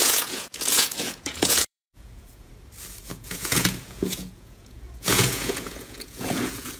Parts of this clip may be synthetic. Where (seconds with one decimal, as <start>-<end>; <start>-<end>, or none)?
0.0-2.5; 3.0-6.8